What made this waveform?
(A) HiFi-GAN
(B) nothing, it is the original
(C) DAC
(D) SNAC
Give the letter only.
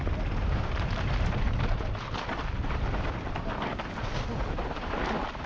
B